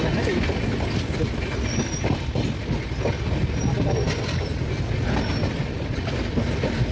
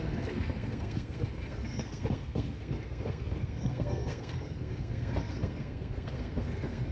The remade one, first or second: second